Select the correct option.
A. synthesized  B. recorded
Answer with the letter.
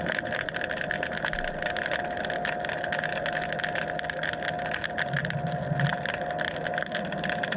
B